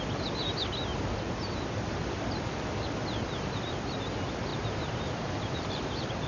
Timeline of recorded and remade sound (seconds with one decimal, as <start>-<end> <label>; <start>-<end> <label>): 0.0-0.9 recorded; 0.9-1.9 remade; 1.9-4.5 recorded; 4.5-6.3 remade